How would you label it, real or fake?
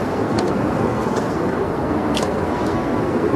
fake